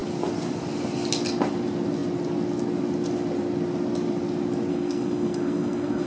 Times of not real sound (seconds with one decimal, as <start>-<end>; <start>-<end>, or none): 4.7-6.1